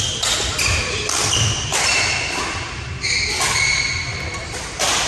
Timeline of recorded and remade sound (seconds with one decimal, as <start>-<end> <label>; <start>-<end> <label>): 0.0-5.1 recorded